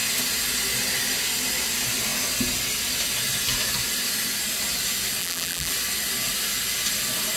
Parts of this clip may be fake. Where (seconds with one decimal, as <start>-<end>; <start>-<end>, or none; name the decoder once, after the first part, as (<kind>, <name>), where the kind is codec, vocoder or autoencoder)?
5.2-5.7 (vocoder, BigVGAN v2)

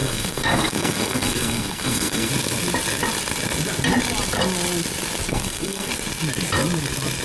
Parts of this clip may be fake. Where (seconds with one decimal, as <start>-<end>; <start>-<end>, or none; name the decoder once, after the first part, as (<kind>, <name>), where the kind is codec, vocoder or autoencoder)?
0.0-2.3 (codec, SNAC); 5.3-5.9